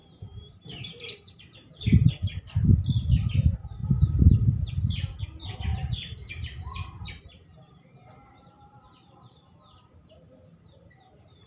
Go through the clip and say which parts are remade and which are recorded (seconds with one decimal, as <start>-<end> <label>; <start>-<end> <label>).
0.0-2.1 remade; 2.1-3.8 recorded; 3.8-4.7 remade; 4.7-5.7 recorded; 5.7-10.6 remade; 10.6-11.5 recorded